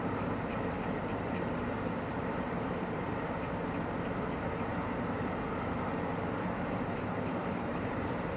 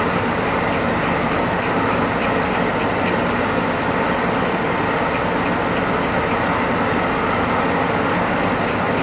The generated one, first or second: first